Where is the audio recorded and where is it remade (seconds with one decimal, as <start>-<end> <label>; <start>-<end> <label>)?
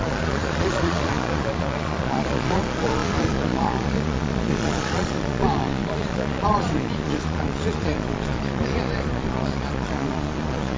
0.0-10.8 remade